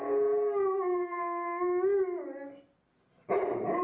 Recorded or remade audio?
recorded